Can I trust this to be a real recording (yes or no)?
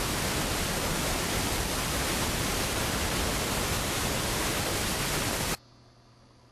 yes